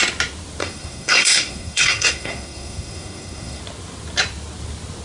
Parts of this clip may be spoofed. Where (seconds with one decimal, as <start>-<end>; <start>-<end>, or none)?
0.6-3.6